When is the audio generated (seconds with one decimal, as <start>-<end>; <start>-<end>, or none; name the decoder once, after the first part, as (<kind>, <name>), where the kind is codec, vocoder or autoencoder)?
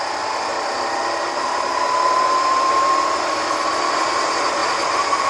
none